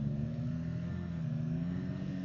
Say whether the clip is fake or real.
fake